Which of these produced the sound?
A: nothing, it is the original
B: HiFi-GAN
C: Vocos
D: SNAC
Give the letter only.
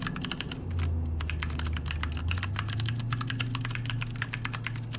A